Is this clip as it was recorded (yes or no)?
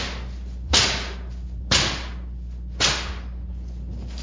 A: yes